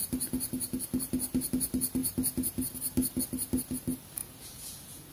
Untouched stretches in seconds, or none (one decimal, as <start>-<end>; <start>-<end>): 0.0-4.2